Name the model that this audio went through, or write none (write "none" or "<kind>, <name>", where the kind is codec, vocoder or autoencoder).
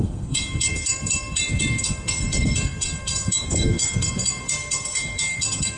codec, SNAC